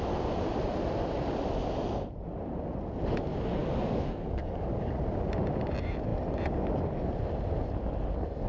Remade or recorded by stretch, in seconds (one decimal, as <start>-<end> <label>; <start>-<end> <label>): 0.0-3.6 recorded; 3.6-4.9 remade; 4.9-8.5 recorded